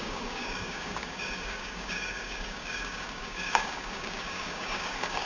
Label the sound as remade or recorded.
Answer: remade